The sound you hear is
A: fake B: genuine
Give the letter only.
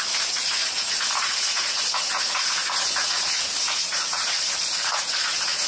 A